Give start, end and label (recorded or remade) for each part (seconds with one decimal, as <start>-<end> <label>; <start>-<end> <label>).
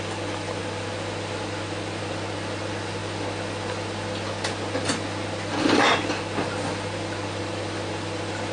0.0-8.5 recorded